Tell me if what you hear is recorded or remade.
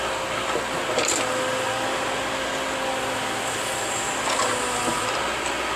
recorded